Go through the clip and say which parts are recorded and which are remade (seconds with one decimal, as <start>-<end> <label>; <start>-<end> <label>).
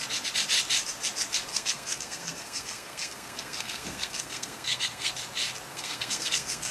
0.0-1.5 recorded; 1.5-5.1 remade; 5.1-5.7 recorded; 5.7-6.7 remade